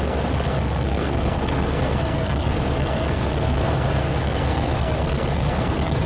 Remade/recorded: remade